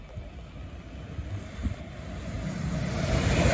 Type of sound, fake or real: real